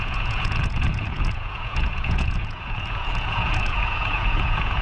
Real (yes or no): no